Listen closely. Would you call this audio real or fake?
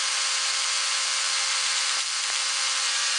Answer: fake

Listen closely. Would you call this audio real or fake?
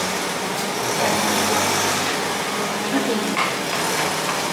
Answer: real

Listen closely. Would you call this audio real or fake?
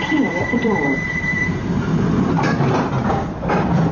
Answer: fake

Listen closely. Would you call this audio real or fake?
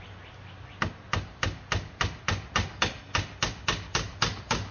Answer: real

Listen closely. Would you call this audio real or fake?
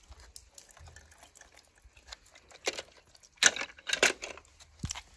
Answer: real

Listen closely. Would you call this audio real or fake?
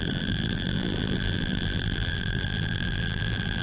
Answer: fake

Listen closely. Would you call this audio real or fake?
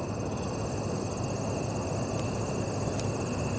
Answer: real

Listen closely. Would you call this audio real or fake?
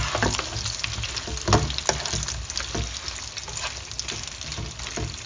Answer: real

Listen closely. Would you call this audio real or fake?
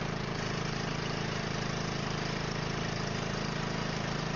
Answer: fake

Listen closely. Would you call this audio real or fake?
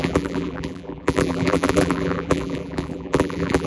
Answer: fake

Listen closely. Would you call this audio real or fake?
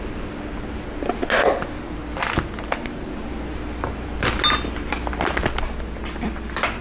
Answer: real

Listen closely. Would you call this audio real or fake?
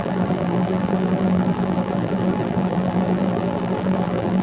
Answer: fake